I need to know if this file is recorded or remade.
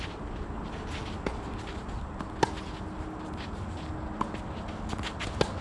recorded